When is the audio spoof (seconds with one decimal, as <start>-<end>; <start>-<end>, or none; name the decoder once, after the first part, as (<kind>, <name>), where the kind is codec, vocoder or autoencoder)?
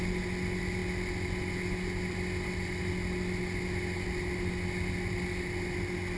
none